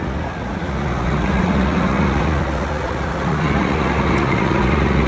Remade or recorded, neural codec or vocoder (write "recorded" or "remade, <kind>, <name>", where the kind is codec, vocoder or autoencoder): remade, vocoder, Vocos